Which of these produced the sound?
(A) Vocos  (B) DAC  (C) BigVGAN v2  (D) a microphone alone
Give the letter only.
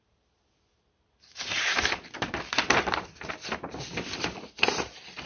C